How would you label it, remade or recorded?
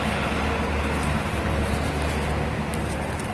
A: recorded